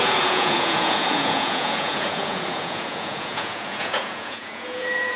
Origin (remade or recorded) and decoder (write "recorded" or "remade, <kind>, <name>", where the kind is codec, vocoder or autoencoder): remade, vocoder, Vocos